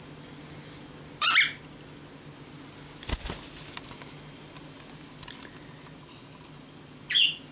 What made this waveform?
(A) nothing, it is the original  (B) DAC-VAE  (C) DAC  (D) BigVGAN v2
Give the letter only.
A